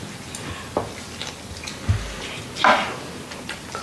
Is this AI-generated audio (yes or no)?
no